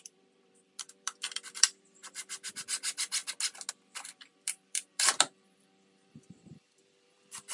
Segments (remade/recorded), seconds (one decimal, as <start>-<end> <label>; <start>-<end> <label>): 0.0-2.0 remade; 2.0-2.5 recorded; 2.5-3.2 remade; 3.2-3.7 recorded; 3.7-7.5 remade

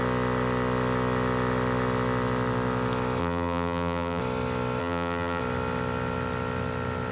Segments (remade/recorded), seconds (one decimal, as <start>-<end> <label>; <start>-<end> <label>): 0.0-3.2 recorded; 3.2-4.2 remade; 4.2-4.8 recorded; 4.8-5.4 remade; 5.4-7.1 recorded

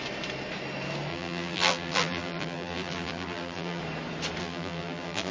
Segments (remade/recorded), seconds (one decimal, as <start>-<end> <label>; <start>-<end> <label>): 0.0-1.1 recorded; 1.1-3.8 remade; 3.8-4.4 recorded; 4.4-5.3 remade

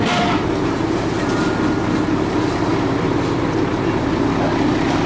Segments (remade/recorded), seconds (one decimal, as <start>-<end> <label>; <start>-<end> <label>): 0.0-2.7 recorded; 2.7-4.0 remade; 4.0-5.1 recorded

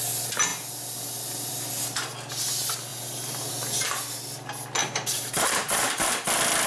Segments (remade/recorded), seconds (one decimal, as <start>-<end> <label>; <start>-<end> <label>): 0.0-2.9 recorded; 2.9-3.5 remade; 3.5-4.8 recorded; 4.8-6.1 remade; 6.1-6.7 recorded

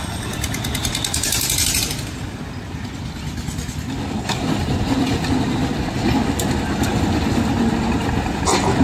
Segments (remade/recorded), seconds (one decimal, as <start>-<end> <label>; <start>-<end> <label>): 0.0-8.8 recorded

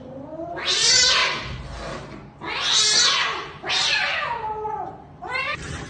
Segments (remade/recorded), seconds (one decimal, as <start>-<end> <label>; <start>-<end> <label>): 0.0-1.2 remade; 1.2-3.7 recorded; 3.7-5.9 remade

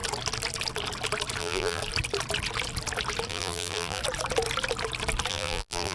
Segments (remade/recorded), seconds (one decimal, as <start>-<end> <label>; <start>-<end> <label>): 0.0-1.4 recorded; 1.4-1.8 remade; 1.8-3.3 recorded; 3.3-4.0 remade; 4.0-5.3 recorded; 5.3-5.9 remade